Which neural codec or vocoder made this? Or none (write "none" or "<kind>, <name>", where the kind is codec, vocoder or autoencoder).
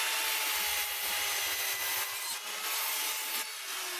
none